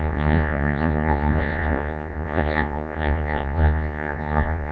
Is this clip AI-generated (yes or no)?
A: yes